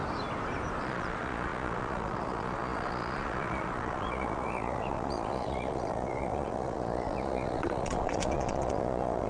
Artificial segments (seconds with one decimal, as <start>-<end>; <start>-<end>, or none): 0.8-9.3